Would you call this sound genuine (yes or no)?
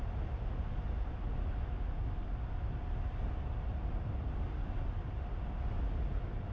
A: yes